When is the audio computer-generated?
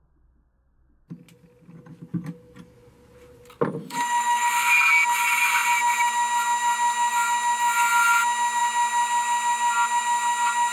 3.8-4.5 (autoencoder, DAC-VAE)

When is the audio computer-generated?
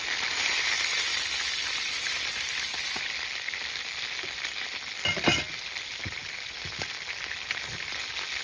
none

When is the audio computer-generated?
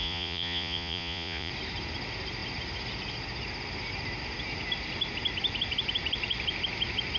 0.0-1.5 (vocoder, Vocos)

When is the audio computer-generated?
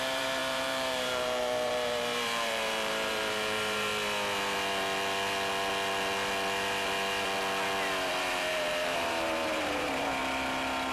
0.0-3.9 (vocoder, BigVGAN v2); 8.2-10.2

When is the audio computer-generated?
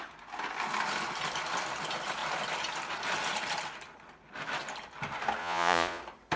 5.4-6.0 (vocoder, Vocos)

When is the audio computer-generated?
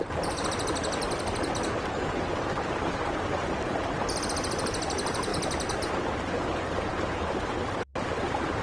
7.9-8.6 (vocoder, BigVGAN v2)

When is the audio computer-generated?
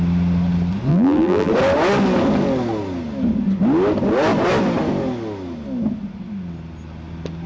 0.9-1.5 (vocoder, BigVGAN v2)